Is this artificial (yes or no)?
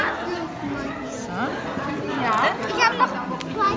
no